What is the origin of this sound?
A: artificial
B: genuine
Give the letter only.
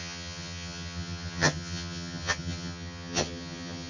A